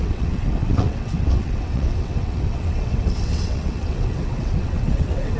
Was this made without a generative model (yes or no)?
no